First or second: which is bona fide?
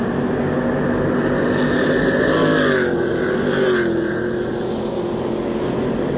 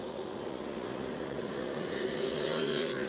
first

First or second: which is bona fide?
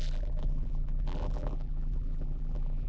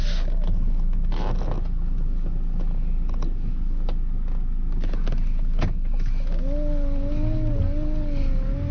second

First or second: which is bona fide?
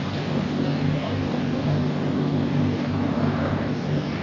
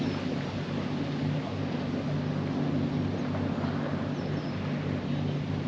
second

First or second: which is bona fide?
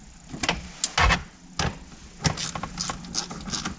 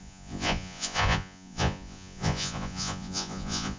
first